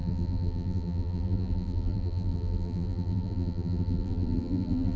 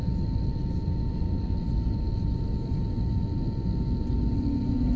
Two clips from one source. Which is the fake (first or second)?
first